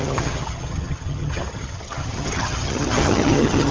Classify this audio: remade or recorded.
remade